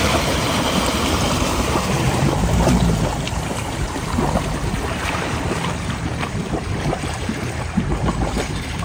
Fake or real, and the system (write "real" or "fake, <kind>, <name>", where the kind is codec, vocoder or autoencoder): fake, vocoder, BigVGAN v2